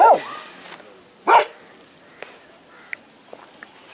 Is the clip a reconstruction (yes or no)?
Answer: no